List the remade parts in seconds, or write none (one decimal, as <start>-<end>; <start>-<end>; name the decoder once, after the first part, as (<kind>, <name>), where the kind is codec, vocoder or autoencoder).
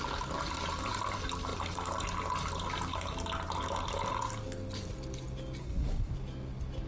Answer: 5.6-6.1 (codec, SNAC)